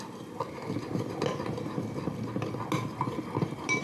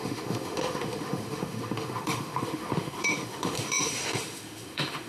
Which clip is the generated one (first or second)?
second